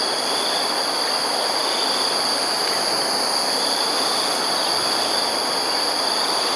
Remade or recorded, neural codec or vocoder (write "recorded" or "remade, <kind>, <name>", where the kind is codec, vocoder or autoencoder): recorded